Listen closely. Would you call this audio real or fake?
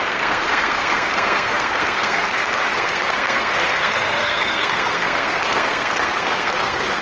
fake